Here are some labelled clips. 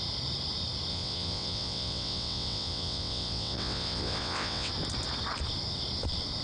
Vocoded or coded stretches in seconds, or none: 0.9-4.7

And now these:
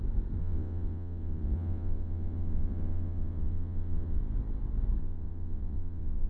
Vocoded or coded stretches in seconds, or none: 0.4-4.2; 5.0-6.3

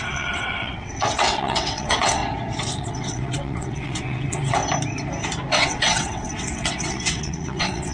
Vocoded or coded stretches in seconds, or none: 0.0-2.2; 2.8-4.6; 5.5-7.9